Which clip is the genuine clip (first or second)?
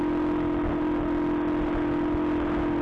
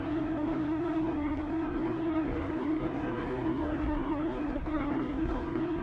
first